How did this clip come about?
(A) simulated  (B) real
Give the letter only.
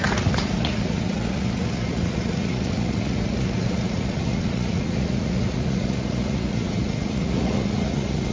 A